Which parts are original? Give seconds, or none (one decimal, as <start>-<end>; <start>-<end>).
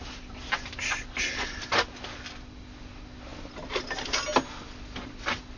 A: 0.0-5.6